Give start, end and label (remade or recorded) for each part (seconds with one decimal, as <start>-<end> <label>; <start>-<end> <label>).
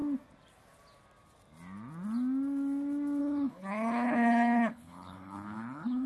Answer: 0.0-3.2 recorded; 3.2-6.1 remade